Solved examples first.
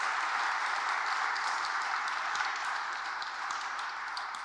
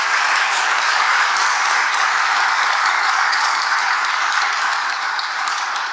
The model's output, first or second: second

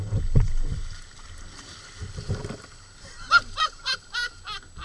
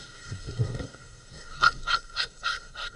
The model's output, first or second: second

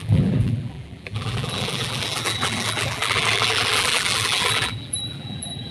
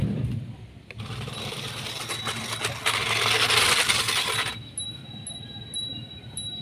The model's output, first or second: first